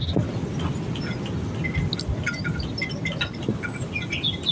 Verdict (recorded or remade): recorded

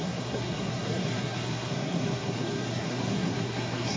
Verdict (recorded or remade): remade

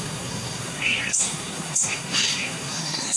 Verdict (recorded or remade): remade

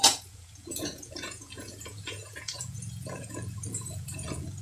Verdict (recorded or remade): remade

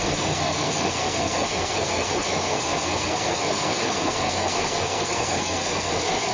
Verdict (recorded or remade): remade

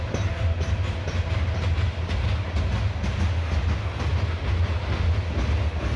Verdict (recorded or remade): recorded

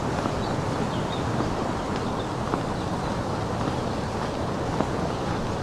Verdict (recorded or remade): recorded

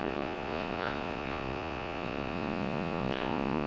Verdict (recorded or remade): remade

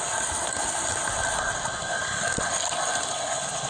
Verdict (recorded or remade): recorded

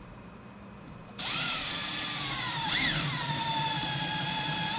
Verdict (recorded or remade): remade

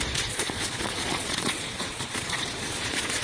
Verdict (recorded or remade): remade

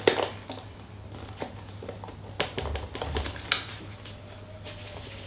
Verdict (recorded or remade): recorded